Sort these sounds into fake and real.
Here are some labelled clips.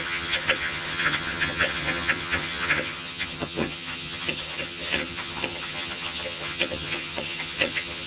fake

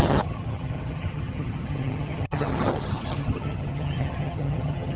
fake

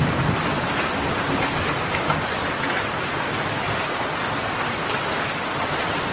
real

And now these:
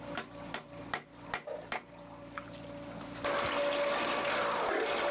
real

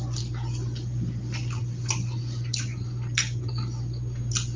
real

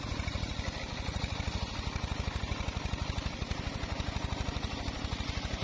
real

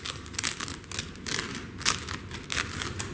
real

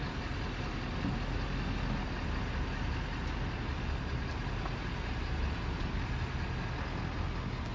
real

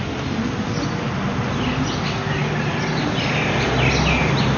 real